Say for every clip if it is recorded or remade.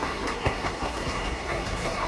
remade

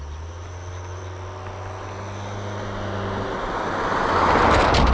recorded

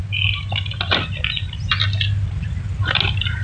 recorded